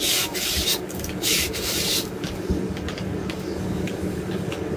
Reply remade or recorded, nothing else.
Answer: remade